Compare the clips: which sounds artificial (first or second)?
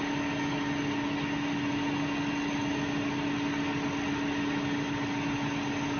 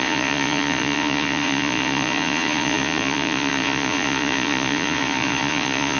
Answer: second